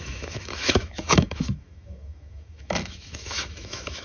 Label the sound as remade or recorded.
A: remade